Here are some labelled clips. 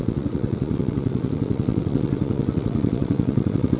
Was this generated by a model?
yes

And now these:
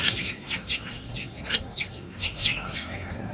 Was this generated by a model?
yes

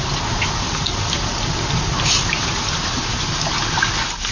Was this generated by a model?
no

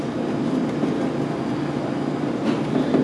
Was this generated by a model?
no